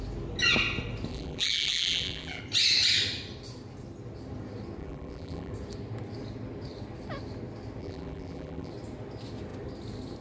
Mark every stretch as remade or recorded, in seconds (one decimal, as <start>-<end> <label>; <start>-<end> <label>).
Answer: 0.0-1.1 recorded; 1.1-2.4 remade; 2.4-4.8 recorded; 4.8-5.5 remade; 5.5-7.8 recorded; 7.8-8.7 remade; 8.7-10.2 recorded